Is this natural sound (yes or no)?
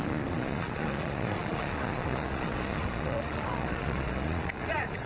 no